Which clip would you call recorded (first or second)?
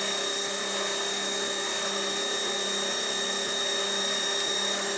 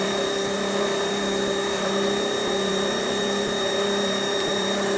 first